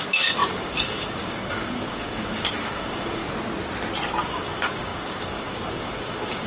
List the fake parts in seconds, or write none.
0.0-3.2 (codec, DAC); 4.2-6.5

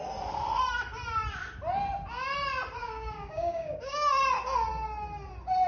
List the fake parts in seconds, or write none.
2.8-4.2 (codec, DAC)

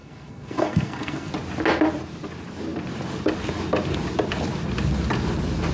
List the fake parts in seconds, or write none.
0.0-1.3 (codec, SNAC)